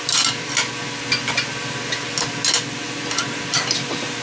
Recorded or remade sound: recorded